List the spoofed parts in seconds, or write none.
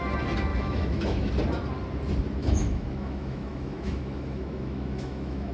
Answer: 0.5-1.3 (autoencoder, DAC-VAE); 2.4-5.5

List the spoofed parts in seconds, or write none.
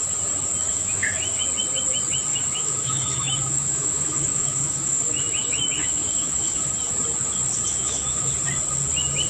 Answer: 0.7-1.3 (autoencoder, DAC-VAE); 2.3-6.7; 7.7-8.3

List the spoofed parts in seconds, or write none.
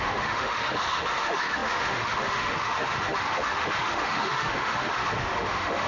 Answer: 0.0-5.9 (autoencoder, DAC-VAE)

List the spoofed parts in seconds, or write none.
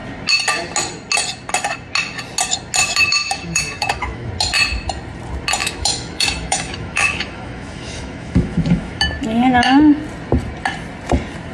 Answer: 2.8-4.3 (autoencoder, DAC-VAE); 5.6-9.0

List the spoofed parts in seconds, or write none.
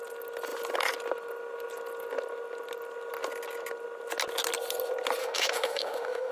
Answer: 5.2-6.3 (autoencoder, DAC-VAE)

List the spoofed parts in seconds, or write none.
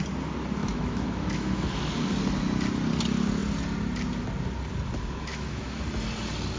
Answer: 0.6-1.7 (autoencoder, DAC-VAE); 5.3-5.8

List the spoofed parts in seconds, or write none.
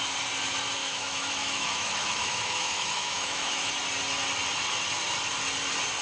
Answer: 0.8-3.7 (autoencoder, DAC-VAE)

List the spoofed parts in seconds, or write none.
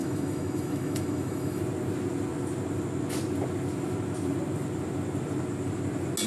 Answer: 0.0-1.6 (autoencoder, DAC-VAE)